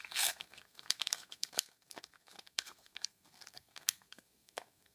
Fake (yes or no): yes